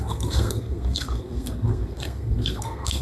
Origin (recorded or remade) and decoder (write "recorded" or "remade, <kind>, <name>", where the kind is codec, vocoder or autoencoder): remade, codec, SNAC